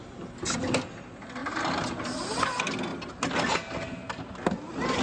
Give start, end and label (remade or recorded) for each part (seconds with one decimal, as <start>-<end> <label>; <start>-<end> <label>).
0.0-5.0 recorded